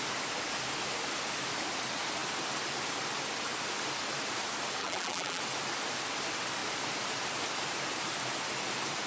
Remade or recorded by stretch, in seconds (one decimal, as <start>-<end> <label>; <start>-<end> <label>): 0.0-4.8 recorded; 4.8-5.4 remade; 5.4-9.1 recorded